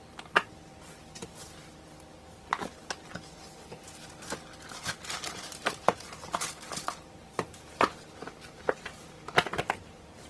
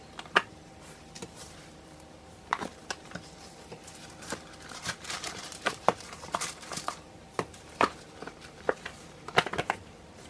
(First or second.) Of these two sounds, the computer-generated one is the second